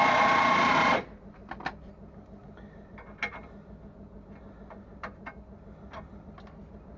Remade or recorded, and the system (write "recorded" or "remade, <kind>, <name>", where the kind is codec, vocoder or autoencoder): recorded